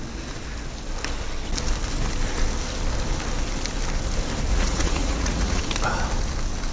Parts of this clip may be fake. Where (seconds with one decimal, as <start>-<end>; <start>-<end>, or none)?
4.5-5.6